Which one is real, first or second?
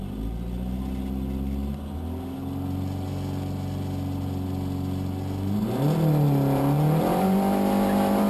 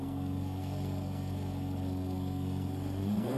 first